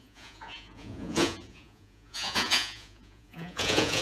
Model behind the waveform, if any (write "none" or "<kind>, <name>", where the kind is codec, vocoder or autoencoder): vocoder, Vocos